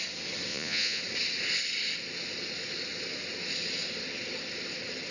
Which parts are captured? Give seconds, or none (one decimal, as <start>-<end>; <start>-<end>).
0.0-0.5; 1.0-5.1